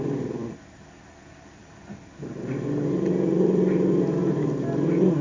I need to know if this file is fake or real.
real